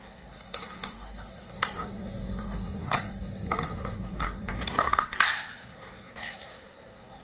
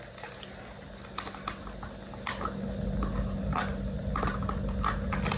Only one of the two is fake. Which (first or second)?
first